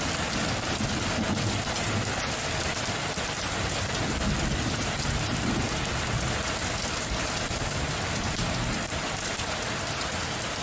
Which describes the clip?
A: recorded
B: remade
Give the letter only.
A